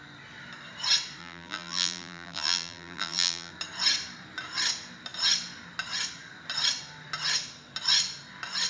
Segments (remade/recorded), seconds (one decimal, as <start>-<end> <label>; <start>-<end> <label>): 0.0-1.2 recorded; 1.2-3.5 remade; 3.5-8.7 recorded